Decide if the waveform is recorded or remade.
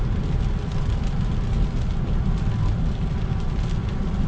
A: recorded